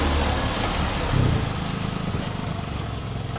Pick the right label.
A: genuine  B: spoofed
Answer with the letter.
A